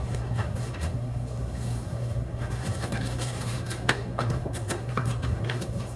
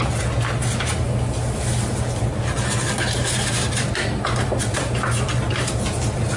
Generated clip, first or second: first